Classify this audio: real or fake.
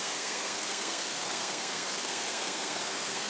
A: fake